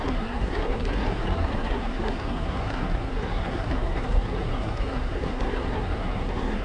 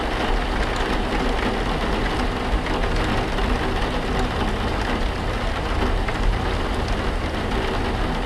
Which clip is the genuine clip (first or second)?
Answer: second